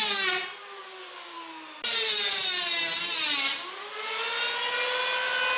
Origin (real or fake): real